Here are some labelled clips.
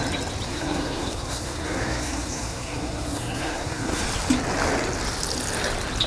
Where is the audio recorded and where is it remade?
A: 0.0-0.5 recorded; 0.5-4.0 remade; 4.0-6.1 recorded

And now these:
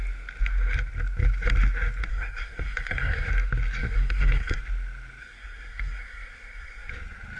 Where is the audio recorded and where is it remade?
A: 0.0-2.1 recorded; 2.1-3.3 remade; 3.3-3.8 recorded; 3.8-4.6 remade; 4.6-5.2 recorded; 5.2-6.9 remade; 6.9-7.4 recorded

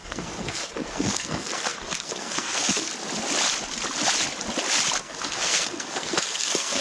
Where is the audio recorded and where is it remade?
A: 0.0-2.9 remade; 2.9-5.0 recorded; 5.0-6.8 remade

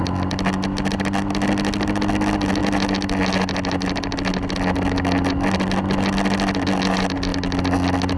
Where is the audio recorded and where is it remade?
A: 0.0-8.2 recorded

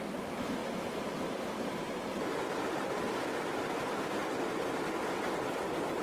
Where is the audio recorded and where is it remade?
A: 0.0-6.0 recorded